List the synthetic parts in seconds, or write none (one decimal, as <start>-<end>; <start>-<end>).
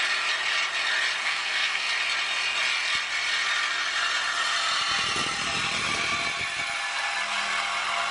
1.2-1.9